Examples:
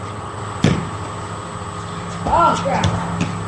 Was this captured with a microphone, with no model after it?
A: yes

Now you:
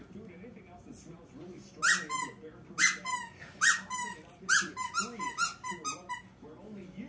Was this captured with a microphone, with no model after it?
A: yes